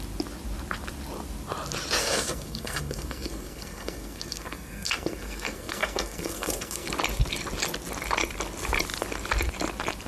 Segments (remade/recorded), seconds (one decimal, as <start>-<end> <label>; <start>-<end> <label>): 0.0-2.0 recorded; 2.0-6.9 remade; 6.9-10.1 recorded